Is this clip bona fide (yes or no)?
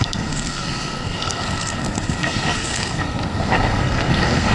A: no